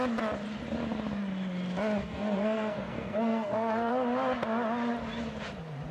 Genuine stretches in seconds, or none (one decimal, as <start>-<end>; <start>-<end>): 0.0-2.0; 3.9-5.9